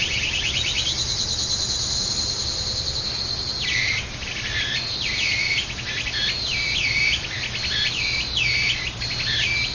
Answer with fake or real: real